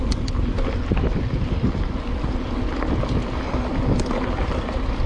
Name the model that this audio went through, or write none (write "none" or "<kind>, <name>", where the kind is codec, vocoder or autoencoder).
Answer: none